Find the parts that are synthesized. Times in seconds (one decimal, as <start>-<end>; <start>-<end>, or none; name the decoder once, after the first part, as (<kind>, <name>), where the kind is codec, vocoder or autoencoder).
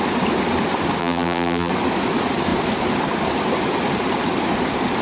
1.0-1.7 (vocoder, BigVGAN v2)